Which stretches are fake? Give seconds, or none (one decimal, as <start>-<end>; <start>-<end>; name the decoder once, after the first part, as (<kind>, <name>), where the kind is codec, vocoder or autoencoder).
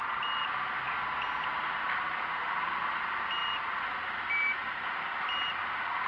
none